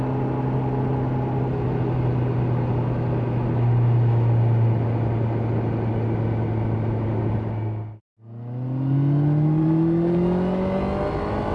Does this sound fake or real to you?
real